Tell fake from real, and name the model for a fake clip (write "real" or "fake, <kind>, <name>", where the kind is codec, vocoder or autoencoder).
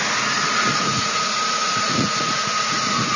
fake, vocoder, Vocos